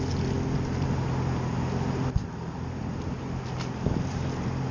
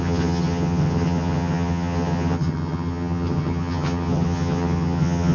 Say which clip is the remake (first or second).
second